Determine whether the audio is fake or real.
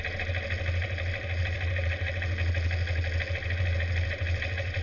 real